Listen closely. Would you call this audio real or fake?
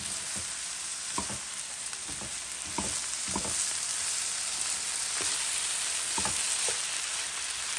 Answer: real